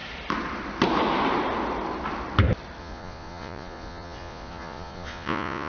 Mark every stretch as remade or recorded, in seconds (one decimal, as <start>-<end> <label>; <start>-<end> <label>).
0.0-2.8 recorded; 2.8-5.7 remade